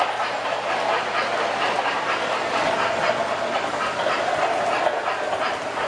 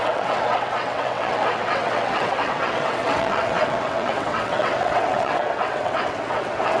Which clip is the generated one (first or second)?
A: second